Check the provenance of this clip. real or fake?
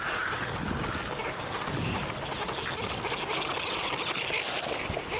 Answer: real